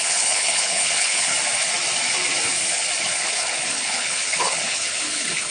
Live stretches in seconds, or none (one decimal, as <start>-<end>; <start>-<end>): 1.3-3.0